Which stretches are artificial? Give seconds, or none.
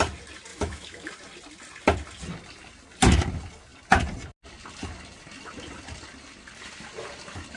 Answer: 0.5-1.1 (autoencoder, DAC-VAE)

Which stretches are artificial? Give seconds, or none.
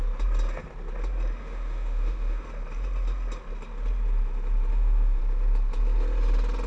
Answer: 1.4-2.4 (autoencoder, DAC-VAE); 4.7-5.2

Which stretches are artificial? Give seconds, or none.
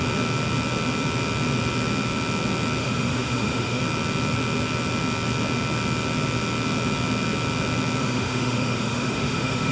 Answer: 2.8-3.8 (autoencoder, DAC-VAE); 8.0-9.7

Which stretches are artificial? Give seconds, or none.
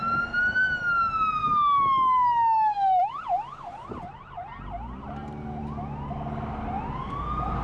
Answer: 1.4-3.1 (autoencoder, DAC-VAE)